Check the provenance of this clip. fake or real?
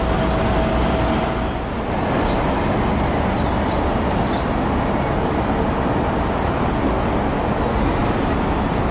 real